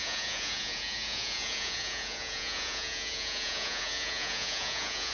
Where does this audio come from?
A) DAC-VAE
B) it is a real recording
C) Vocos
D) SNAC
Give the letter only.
C